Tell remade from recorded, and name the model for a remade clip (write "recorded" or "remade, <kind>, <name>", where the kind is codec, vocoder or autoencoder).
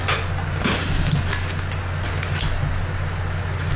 recorded